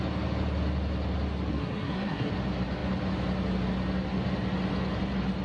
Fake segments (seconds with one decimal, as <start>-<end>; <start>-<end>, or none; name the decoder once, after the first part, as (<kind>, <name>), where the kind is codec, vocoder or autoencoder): 1.5-2.3 (codec, SNAC)